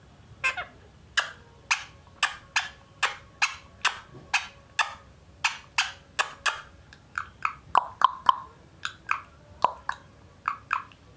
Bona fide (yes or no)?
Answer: yes